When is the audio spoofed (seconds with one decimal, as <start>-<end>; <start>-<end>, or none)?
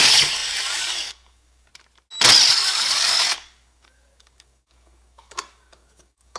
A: 0.0-1.7; 2.5-6.4